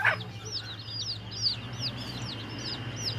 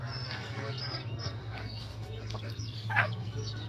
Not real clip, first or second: second